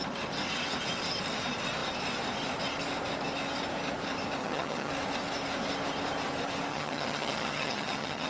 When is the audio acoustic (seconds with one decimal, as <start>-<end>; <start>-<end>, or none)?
0.0-4.4; 4.9-6.7